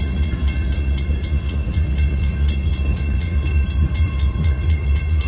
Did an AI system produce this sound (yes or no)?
yes